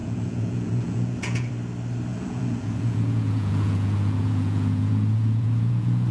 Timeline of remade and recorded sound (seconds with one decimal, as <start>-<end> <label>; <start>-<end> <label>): 0.0-1.5 remade; 1.5-2.1 recorded; 2.1-6.1 remade